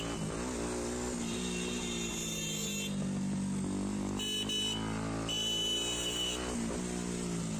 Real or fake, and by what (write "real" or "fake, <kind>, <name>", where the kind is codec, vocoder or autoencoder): real